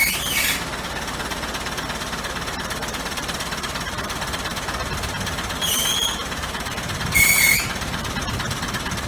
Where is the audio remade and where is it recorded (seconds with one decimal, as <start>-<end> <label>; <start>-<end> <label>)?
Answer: 0.0-2.8 recorded; 2.8-7.4 remade; 7.4-9.1 recorded